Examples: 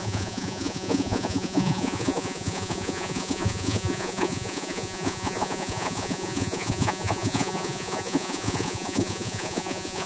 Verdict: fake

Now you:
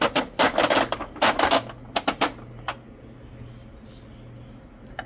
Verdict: real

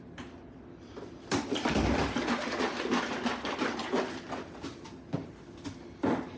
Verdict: real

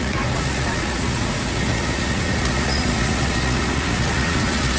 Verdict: fake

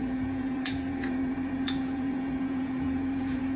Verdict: fake